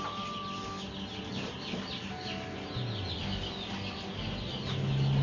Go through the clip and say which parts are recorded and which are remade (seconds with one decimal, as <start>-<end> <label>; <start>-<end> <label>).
0.0-5.2 recorded